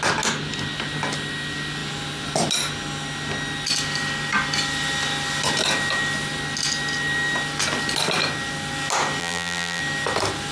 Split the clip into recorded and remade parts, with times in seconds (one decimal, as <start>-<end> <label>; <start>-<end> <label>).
0.0-9.2 recorded; 9.2-9.8 remade; 9.8-10.5 recorded